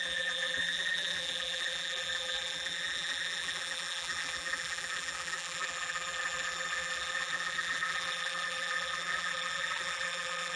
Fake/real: fake